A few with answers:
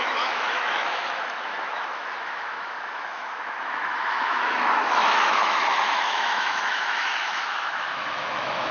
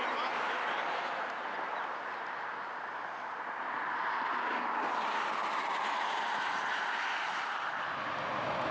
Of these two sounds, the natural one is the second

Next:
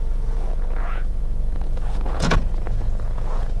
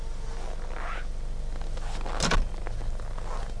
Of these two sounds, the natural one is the second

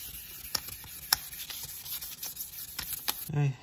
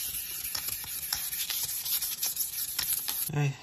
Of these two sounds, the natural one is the first